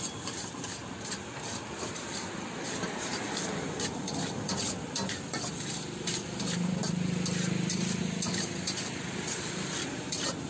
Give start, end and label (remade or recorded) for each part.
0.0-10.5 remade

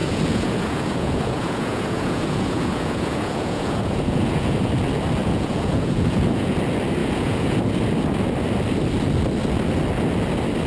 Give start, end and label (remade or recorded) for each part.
0.0-4.7 remade; 4.7-5.2 recorded; 5.2-6.6 remade; 6.6-7.0 recorded; 7.0-7.6 remade; 7.6-10.7 recorded

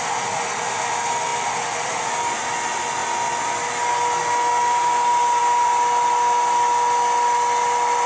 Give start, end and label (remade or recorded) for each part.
0.0-1.3 recorded; 1.3-2.0 remade; 2.0-8.1 recorded

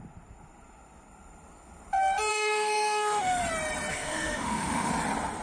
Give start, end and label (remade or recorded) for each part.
0.0-2.3 recorded; 2.3-3.4 remade; 3.4-3.9 recorded; 3.9-4.9 remade; 4.9-5.4 recorded

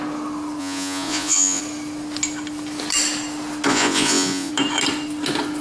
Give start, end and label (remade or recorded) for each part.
0.0-0.6 recorded; 0.6-1.6 remade; 1.6-3.7 recorded; 3.7-4.5 remade; 4.5-5.6 recorded

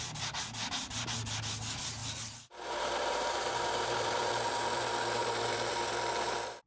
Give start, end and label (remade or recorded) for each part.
0.0-2.0 recorded; 2.0-4.3 remade; 4.3-6.7 recorded